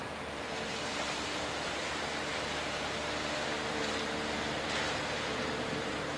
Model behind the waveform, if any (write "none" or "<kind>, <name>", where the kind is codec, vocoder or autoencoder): vocoder, BigVGAN v2